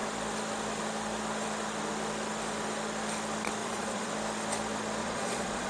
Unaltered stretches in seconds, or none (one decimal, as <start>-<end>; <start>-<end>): 0.0-3.6; 4.1-5.0